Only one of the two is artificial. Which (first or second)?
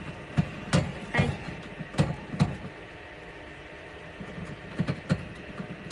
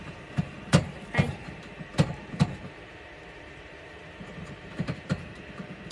second